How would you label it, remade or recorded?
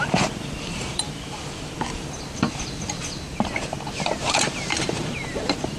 remade